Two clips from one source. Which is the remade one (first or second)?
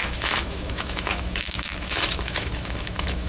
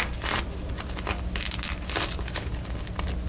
first